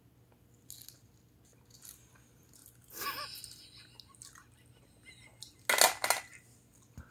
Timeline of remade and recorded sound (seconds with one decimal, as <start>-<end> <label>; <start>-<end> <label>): 0.0-7.1 recorded